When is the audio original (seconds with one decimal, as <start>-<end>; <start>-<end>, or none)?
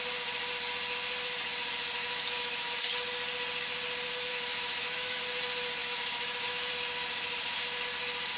0.0-2.0; 2.7-4.3; 5.2-5.8; 6.7-8.4